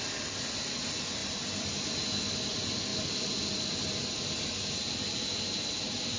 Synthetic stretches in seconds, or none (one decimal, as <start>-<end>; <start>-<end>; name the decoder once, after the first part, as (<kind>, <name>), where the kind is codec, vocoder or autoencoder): none